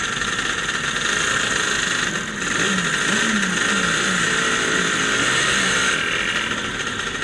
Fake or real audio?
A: real